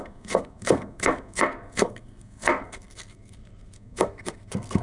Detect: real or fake fake